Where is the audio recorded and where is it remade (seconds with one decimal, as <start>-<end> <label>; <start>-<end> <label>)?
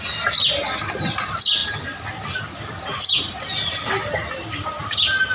0.0-5.3 recorded